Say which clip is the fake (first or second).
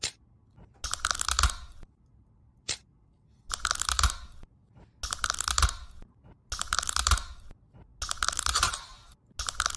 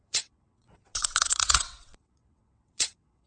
second